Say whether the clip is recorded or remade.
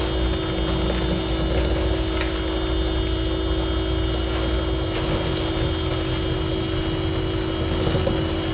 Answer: recorded